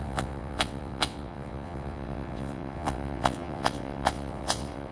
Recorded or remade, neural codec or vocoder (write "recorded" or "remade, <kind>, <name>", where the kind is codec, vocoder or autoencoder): remade, vocoder, WaveNeXt